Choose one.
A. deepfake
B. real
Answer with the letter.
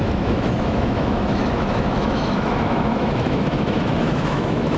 A